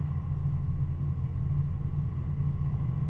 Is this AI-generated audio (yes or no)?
no